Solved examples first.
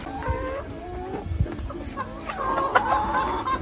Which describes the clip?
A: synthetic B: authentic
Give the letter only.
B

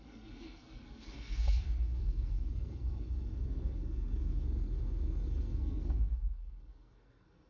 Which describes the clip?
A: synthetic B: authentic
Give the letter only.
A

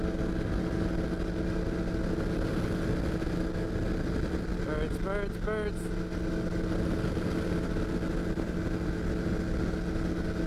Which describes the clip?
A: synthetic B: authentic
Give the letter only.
B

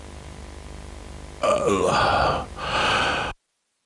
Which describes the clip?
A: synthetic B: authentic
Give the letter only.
B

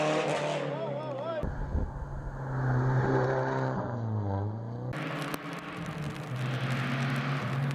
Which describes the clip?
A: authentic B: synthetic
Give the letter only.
A